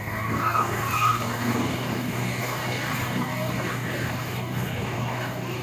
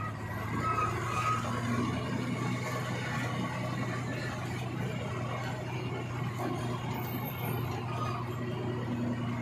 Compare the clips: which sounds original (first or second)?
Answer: second